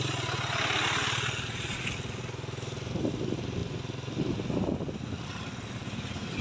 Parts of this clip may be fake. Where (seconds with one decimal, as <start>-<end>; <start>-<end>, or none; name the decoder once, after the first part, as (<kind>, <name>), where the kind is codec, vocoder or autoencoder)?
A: none